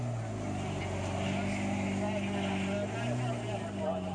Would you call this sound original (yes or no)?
yes